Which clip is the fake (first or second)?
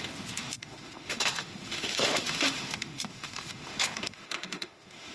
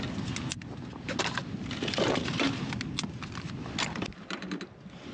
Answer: first